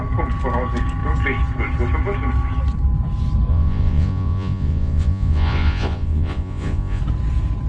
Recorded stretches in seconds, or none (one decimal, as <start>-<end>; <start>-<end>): 0.0-3.5; 7.0-7.7

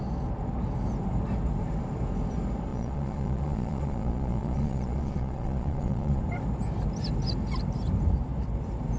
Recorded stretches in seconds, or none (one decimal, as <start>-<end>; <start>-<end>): 0.0-2.7; 6.2-9.0

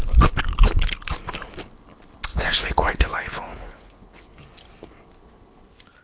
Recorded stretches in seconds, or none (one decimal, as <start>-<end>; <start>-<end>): 0.0-2.3; 4.3-6.0

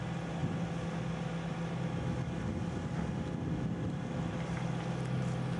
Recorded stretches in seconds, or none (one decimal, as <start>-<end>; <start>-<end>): 0.0-5.6